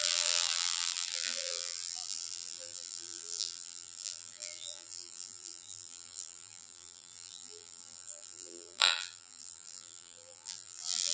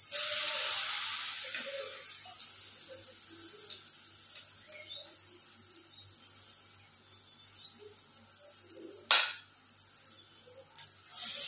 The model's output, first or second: first